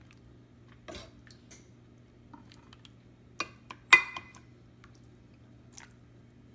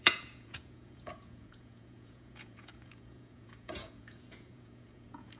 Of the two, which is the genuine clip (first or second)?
first